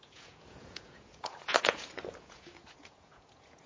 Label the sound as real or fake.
fake